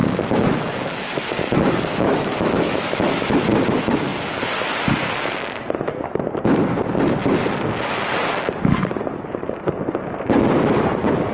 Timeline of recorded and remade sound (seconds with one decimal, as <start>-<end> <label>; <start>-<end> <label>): 0.0-3.3 remade; 3.3-11.3 recorded